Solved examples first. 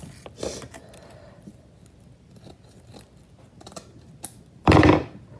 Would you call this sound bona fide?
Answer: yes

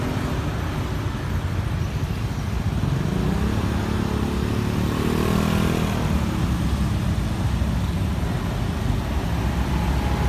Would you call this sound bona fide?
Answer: yes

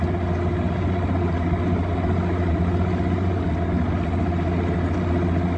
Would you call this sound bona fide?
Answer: yes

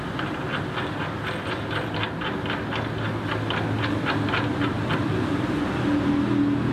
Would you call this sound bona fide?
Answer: yes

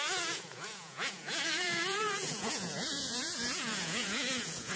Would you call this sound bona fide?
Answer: no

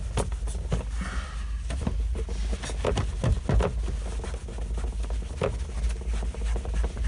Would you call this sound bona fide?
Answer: yes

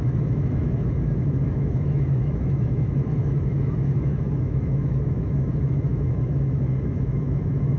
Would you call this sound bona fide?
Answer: no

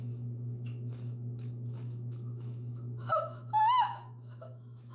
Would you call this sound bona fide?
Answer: no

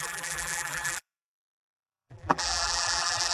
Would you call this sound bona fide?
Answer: no